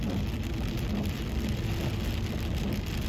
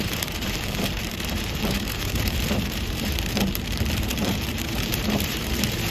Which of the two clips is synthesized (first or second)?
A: second